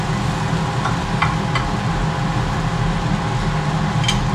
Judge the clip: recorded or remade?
recorded